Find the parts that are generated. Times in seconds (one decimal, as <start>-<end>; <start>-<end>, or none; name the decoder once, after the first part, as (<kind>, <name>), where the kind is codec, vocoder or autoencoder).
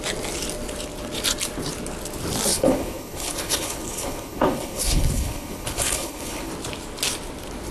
2.5-6.5 (codec, HILCodec)